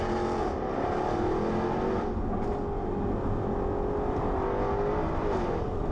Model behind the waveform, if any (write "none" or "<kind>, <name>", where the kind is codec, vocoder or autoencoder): none